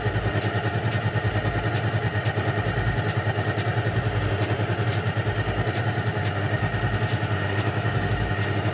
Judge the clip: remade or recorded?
recorded